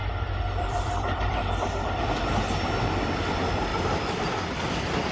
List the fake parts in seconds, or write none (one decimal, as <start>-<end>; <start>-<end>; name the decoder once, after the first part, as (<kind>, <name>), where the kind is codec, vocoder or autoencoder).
0.0-1.8 (vocoder, BigVGAN v2); 3.7-4.3